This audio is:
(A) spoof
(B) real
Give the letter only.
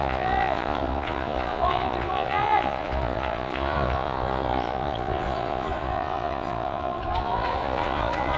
A